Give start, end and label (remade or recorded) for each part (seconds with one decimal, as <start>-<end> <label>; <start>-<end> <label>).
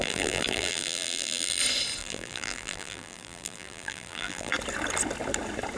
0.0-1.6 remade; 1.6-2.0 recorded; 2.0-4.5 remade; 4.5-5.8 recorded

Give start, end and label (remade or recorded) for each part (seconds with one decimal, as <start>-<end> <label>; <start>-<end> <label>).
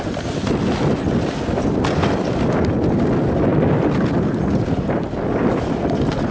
0.0-6.3 recorded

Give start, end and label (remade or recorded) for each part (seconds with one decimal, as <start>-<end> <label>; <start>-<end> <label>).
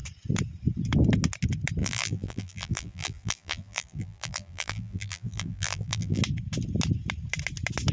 0.0-1.8 recorded; 1.8-6.2 remade; 6.2-7.9 recorded